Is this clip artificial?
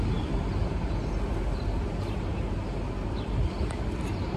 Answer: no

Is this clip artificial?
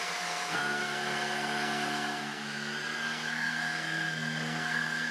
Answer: yes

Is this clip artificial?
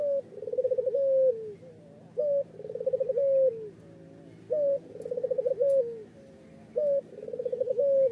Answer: no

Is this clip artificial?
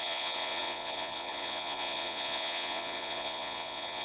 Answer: yes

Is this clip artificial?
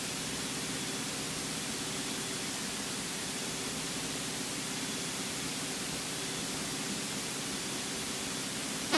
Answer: no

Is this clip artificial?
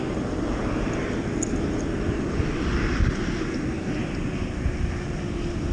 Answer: no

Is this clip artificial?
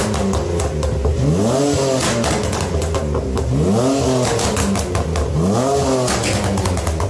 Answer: no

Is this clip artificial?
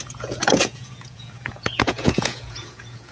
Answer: yes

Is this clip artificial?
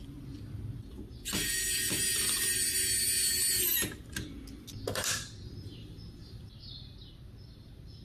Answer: no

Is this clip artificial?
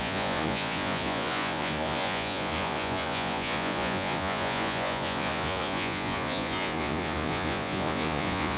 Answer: yes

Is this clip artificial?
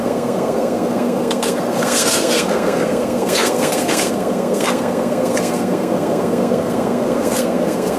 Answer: yes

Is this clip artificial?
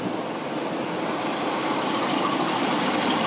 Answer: no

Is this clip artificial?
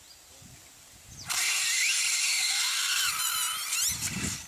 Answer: no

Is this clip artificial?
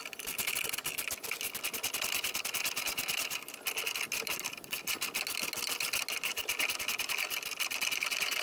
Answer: no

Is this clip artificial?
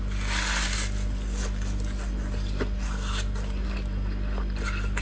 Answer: no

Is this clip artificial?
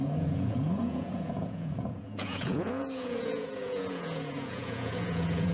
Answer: yes